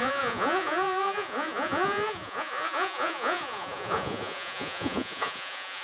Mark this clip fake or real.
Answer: fake